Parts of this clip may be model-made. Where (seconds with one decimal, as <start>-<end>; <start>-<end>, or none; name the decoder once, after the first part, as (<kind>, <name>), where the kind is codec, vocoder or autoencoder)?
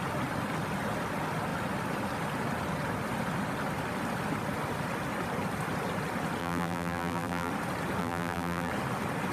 6.4-7.5 (vocoder, BigVGAN v2); 8.0-8.7